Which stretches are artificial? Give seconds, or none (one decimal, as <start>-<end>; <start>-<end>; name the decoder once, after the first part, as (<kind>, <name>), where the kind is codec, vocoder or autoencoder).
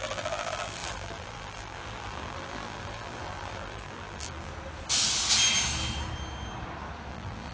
0.0-4.5 (vocoder, BigVGAN v2); 7.1-7.5